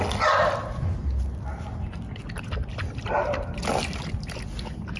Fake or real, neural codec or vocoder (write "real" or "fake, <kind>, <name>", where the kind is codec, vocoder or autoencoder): real